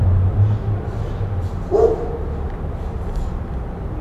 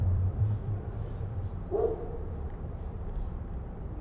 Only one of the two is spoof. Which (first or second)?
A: second